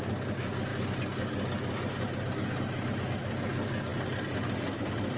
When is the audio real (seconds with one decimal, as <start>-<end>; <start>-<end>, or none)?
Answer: 0.0-5.2